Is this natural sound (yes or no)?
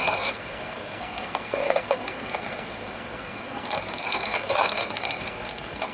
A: no